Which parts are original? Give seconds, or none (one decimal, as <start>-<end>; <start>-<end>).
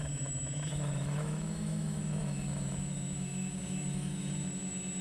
none